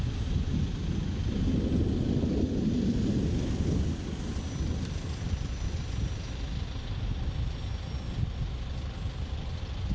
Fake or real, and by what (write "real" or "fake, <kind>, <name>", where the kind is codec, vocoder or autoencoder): real